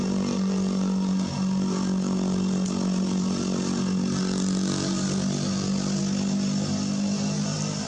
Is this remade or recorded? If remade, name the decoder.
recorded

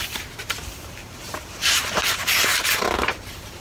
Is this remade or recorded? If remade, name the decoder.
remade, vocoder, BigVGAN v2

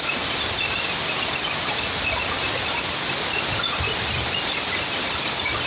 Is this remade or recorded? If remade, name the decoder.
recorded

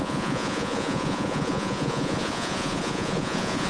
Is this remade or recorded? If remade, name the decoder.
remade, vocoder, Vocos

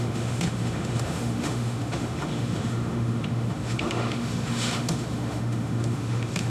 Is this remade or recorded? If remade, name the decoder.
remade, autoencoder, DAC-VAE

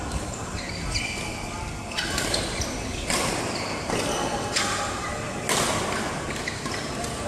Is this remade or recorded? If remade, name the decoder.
recorded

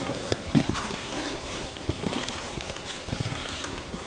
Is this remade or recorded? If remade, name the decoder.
remade, codec, SNAC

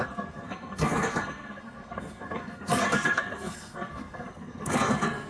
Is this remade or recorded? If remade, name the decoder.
remade, codec, SNAC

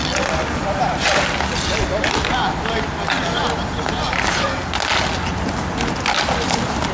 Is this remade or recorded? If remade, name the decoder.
recorded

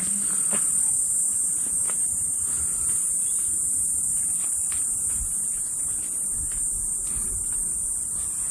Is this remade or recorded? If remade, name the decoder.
recorded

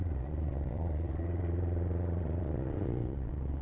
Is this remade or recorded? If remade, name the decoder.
remade, vocoder, Vocos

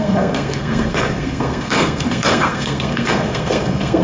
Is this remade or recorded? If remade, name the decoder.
remade, codec, SNAC